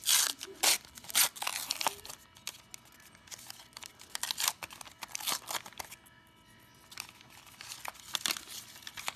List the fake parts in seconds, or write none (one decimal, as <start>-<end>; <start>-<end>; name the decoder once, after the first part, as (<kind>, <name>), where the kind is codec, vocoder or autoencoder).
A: none